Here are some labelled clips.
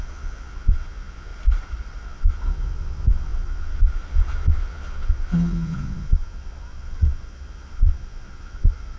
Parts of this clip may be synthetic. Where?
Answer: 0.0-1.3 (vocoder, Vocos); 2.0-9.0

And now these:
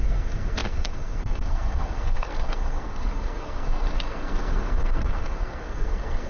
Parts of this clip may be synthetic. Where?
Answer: 0.0-6.3 (codec, SNAC)

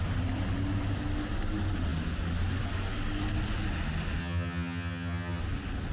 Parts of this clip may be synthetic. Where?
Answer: 4.2-5.4 (vocoder, HiFi-GAN)